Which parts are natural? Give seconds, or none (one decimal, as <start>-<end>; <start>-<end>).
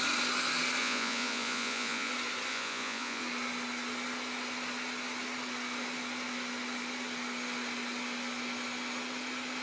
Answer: 0.0-0.8; 2.1-2.5; 3.2-9.6